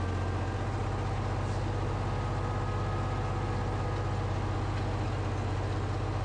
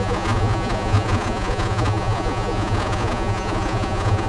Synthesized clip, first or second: second